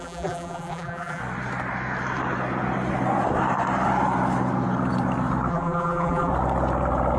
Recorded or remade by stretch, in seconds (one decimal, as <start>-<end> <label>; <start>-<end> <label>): 0.0-1.2 remade; 1.2-5.5 recorded; 5.5-6.3 remade; 6.3-7.2 recorded

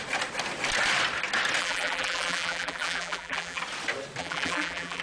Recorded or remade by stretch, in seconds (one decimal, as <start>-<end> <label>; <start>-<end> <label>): 0.0-1.6 recorded; 1.6-3.6 remade; 3.6-4.2 recorded; 4.2-5.0 remade